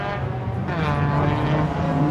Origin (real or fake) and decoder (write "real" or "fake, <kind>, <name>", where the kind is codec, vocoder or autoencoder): real